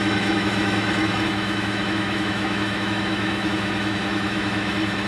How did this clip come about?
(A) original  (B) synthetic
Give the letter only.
B